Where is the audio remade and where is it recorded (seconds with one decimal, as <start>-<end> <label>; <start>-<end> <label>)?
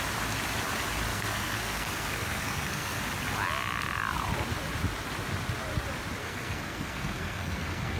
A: 0.0-1.1 recorded; 1.1-3.0 remade; 3.0-6.2 recorded; 6.2-8.0 remade